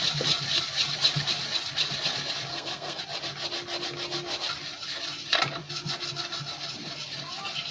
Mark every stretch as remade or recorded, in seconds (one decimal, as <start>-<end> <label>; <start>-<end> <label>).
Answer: 0.0-2.5 recorded; 2.5-3.0 remade; 3.0-7.7 recorded